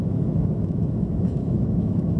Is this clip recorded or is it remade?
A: remade